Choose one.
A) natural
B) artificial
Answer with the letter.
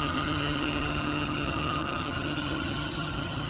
B